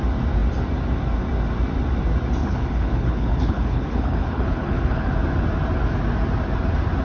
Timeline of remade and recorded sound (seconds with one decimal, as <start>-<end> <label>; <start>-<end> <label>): 0.0-2.4 recorded; 2.4-5.1 remade; 5.1-7.0 recorded

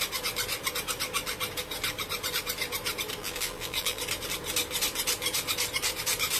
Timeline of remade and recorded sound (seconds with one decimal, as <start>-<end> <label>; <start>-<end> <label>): 0.0-3.2 recorded; 3.2-4.0 remade; 4.0-6.4 recorded

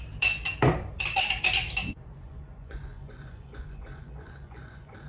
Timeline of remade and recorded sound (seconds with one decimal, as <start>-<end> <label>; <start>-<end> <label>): 0.0-1.8 recorded; 1.8-5.1 remade

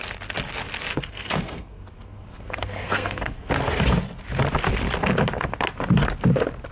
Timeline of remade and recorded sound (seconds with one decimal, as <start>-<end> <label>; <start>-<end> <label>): 0.0-0.9 recorded; 0.9-3.5 remade; 3.5-6.7 recorded

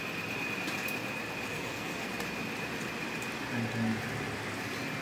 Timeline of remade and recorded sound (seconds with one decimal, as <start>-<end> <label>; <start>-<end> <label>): 0.0-1.5 recorded; 1.5-2.1 remade; 2.1-5.0 recorded